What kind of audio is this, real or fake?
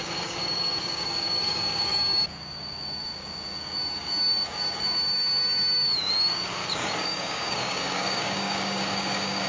fake